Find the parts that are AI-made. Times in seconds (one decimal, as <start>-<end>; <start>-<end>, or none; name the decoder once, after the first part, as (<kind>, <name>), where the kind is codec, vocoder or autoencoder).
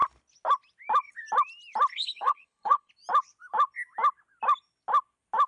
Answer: 2.0-2.9 (codec, HILCodec)